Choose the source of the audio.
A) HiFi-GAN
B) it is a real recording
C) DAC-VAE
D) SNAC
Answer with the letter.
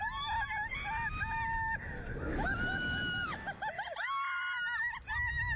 B